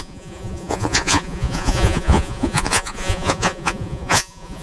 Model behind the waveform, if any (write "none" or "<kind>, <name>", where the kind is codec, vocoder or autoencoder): vocoder, Vocos